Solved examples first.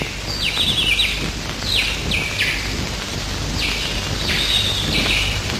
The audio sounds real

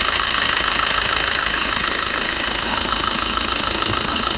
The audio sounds fake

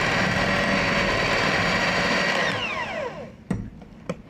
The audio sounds real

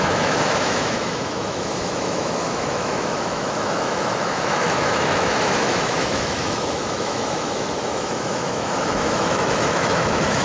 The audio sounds fake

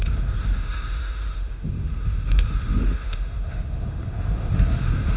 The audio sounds fake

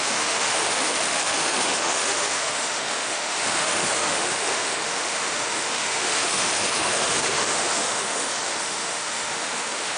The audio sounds fake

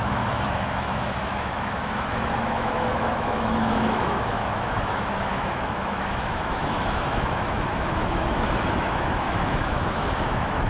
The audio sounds fake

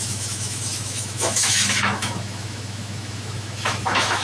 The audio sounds fake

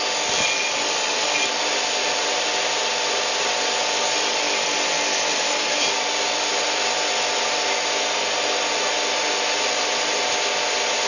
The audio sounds real